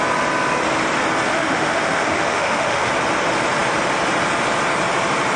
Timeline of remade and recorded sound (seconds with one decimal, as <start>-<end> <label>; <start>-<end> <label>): 0.0-1.3 recorded; 1.3-2.9 remade; 2.9-5.4 recorded